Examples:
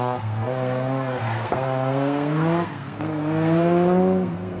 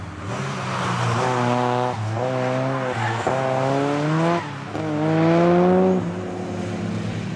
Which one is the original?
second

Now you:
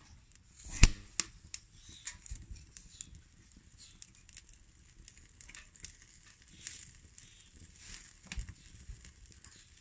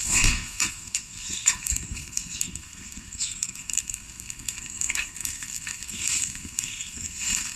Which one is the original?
first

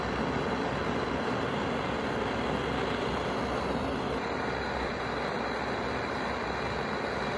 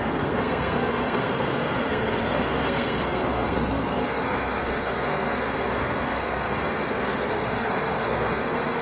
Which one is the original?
first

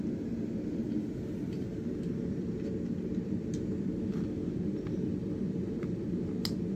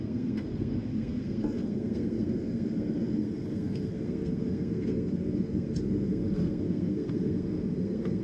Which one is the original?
first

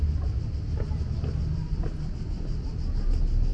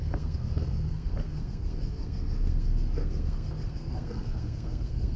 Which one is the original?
first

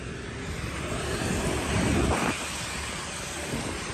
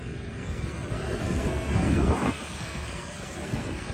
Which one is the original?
first